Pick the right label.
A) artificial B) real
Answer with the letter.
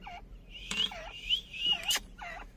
A